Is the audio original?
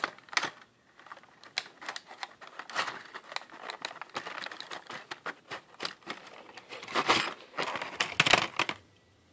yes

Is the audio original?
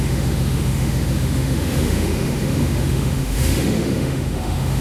no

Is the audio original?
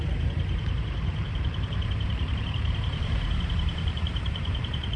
no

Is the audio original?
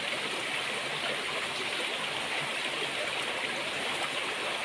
yes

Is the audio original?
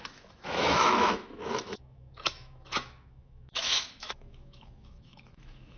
no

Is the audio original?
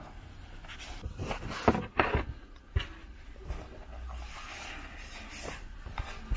yes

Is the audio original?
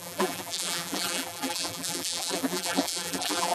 no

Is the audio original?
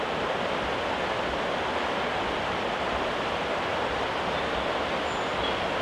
yes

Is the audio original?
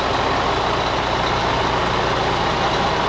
yes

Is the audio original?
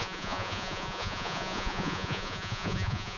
no